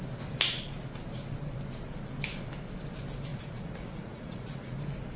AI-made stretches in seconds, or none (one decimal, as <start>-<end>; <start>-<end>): 3.3-4.8